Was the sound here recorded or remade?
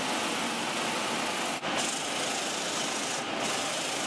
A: recorded